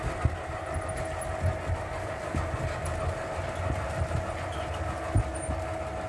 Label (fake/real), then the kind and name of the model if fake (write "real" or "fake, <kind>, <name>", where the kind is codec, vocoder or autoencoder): real